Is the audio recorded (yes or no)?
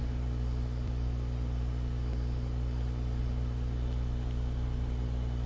yes